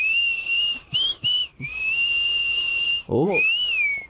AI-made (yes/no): yes